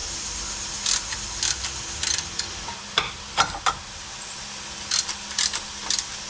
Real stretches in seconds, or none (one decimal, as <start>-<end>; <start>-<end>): 0.0-6.3